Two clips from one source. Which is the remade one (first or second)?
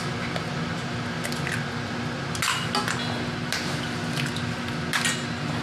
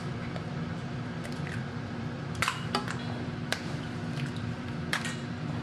second